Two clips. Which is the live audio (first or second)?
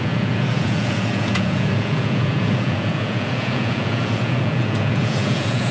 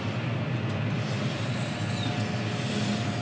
second